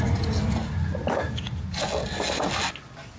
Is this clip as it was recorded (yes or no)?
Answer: yes